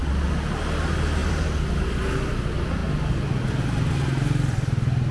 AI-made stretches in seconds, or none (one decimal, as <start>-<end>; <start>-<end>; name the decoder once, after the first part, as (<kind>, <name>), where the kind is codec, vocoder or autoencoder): 1.2-1.8 (vocoder, BigVGAN v2)

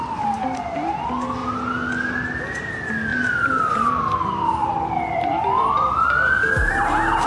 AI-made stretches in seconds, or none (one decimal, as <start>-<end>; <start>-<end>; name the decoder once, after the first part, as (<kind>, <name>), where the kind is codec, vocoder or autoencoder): 3.1-3.7 (vocoder, BigVGAN v2); 4.6-6.8

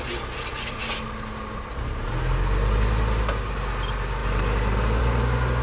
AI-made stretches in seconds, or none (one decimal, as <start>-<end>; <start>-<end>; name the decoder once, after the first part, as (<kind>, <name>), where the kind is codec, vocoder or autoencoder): none

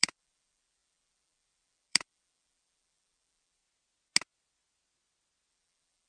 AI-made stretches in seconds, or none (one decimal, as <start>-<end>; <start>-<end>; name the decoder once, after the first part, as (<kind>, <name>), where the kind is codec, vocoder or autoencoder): 0.0-3.6 (vocoder, BigVGAN v2); 5.5-6.1

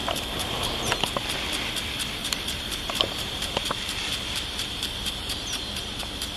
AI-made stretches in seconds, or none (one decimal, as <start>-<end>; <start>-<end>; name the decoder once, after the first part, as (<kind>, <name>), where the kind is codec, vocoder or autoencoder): 0.0-1.0 (vocoder, BigVGAN v2); 2.2-6.0